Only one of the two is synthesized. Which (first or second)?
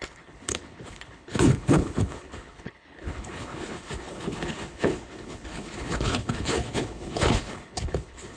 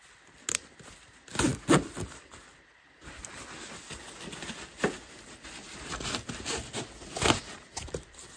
first